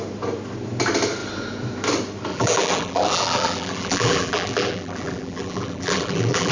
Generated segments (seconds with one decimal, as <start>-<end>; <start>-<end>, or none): 2.3-6.5